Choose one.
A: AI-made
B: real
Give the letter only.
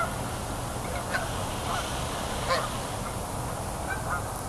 B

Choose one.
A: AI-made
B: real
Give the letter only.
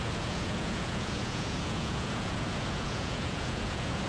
A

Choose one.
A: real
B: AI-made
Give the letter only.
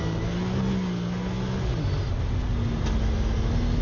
A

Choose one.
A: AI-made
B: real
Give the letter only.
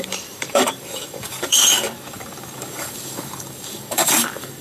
A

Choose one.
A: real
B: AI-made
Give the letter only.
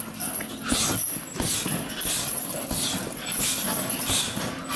A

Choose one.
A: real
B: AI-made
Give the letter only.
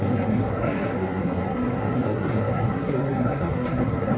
B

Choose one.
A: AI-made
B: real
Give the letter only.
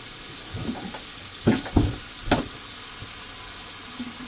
B